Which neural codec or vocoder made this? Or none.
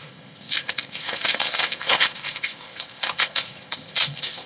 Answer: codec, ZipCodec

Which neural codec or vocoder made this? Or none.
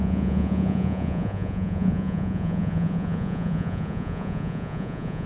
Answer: vocoder, Vocos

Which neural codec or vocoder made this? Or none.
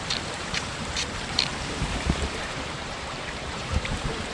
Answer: vocoder, BigVGAN v2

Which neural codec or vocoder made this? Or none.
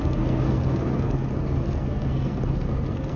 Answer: codec, SNAC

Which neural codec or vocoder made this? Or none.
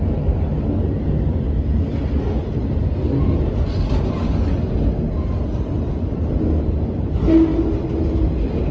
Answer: none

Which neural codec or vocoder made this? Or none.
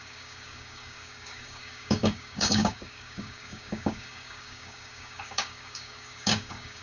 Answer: codec, DAC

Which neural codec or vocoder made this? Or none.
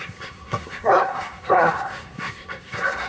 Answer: codec, SNAC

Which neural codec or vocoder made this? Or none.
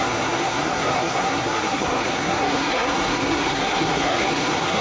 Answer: codec, SNAC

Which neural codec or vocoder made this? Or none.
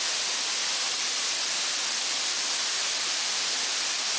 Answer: none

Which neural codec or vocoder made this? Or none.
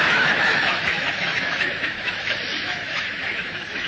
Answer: autoencoder, DAC-VAE